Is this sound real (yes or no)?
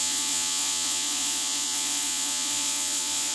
no